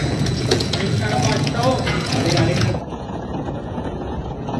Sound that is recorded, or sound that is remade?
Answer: remade